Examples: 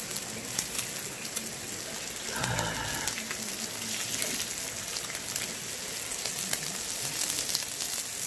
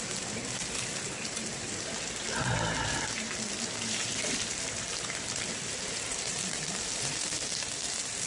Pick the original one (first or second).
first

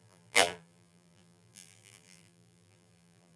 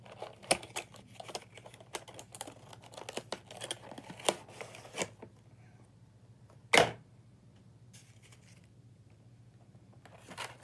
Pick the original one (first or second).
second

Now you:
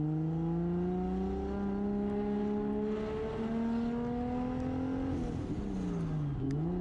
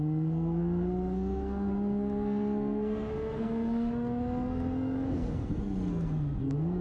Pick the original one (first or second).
first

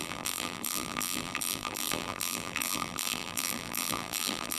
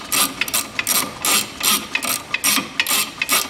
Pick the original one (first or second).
second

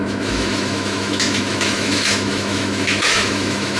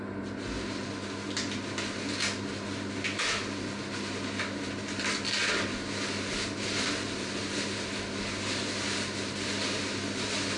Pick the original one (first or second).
second